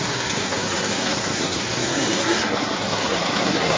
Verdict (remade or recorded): remade